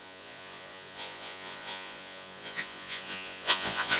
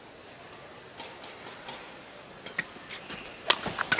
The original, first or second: second